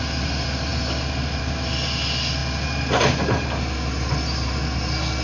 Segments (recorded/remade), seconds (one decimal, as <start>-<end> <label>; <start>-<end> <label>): 0.0-5.2 recorded